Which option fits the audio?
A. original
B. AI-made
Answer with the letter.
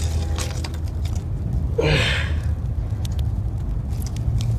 A